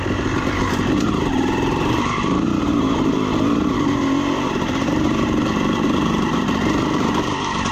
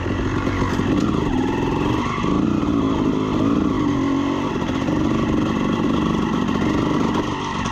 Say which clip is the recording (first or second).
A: second